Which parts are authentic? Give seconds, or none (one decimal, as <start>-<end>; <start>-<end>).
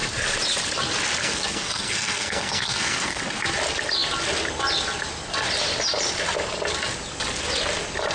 0.0-1.2; 3.2-8.1